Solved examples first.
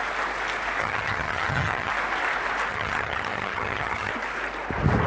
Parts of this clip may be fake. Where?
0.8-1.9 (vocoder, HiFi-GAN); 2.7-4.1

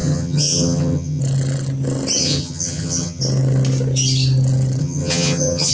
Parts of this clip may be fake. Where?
0.0-1.2 (vocoder, HiFi-GAN); 2.2-3.2; 4.8-5.7

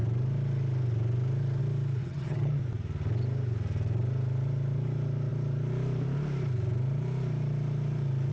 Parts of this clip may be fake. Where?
2.0-2.6 (vocoder, HiFi-GAN)